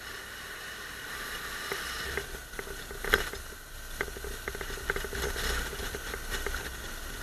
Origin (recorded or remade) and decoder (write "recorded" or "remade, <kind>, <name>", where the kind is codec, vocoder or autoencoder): recorded